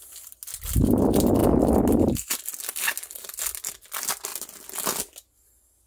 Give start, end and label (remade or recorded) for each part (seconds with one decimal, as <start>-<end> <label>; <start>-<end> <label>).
0.0-5.9 recorded